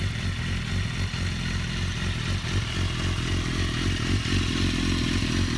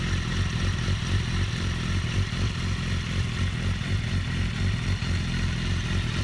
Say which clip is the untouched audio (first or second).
first